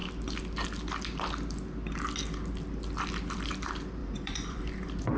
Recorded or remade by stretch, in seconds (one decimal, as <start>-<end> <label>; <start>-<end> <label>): 0.0-4.0 recorded; 4.0-4.6 remade; 4.6-5.2 recorded